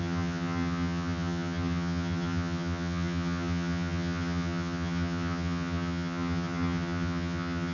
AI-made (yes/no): yes